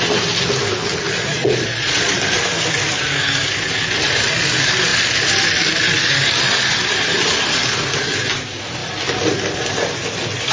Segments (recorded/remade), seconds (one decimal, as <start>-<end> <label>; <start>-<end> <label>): 0.0-1.1 recorded; 1.1-2.2 remade; 2.2-10.5 recorded

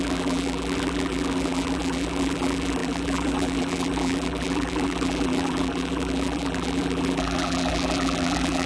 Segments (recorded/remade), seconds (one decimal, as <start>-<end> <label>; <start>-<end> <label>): 0.0-8.7 remade

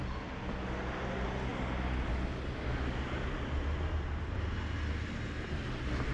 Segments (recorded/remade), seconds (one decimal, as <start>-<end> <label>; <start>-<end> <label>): 0.0-6.1 recorded

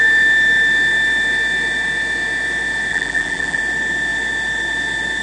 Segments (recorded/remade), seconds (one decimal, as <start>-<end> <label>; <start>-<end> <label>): 0.0-2.9 recorded; 2.9-3.6 remade; 3.6-5.2 recorded

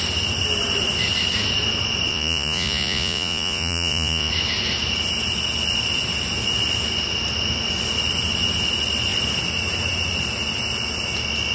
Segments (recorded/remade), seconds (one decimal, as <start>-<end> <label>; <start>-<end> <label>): 0.0-2.1 recorded; 2.1-4.3 remade; 4.3-11.5 recorded

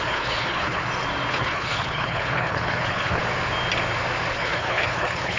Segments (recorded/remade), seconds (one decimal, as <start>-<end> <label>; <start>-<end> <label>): 0.0-0.8 remade; 0.8-1.3 recorded; 1.3-3.2 remade; 3.2-4.3 recorded; 4.3-5.4 remade